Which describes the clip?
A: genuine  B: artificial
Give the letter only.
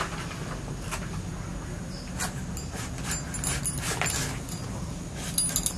A